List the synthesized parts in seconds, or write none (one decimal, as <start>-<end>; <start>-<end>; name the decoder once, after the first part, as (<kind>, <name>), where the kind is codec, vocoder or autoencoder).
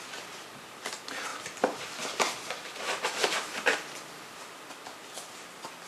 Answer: none